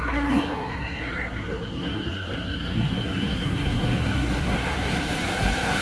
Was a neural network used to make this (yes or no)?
yes